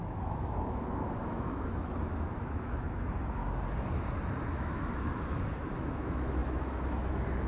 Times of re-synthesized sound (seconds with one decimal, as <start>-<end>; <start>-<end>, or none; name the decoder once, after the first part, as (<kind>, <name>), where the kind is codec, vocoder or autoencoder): 0.0-3.4 (autoencoder, DAC-VAE); 4.5-7.5